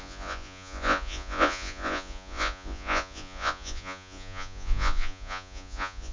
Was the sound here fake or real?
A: fake